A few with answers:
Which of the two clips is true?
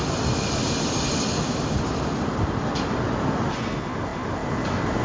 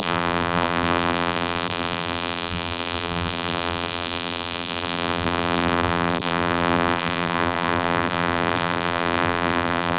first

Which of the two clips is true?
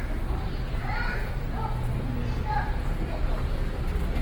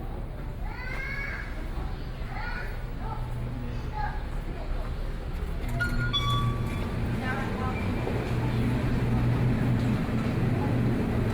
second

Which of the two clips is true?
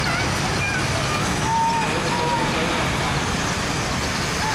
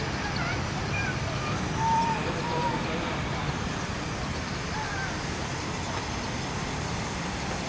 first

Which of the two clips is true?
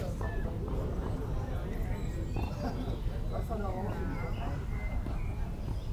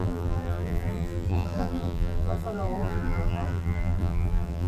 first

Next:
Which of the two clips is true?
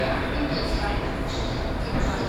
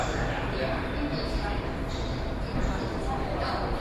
second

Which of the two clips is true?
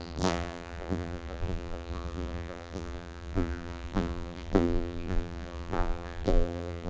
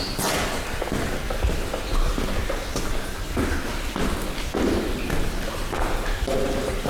second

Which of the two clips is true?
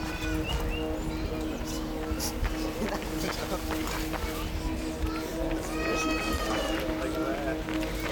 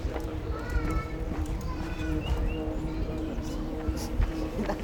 first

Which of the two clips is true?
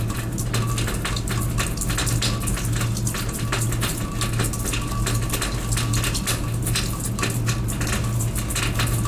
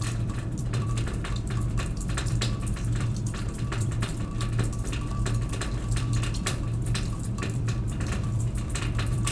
first